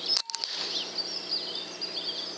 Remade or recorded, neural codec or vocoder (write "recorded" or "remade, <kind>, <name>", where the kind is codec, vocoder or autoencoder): recorded